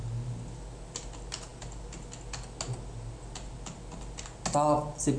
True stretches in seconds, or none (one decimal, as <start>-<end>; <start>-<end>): 0.0-5.2